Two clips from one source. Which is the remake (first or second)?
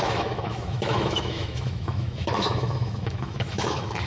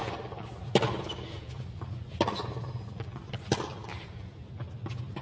first